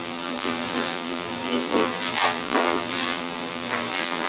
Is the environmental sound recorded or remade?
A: remade